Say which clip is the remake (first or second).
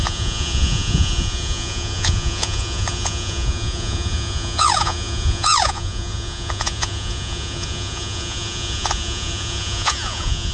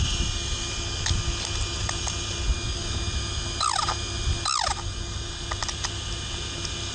first